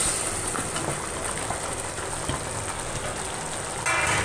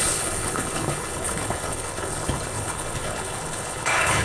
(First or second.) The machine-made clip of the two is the second